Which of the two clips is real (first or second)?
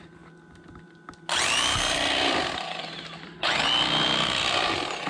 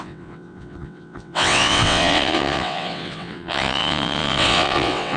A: first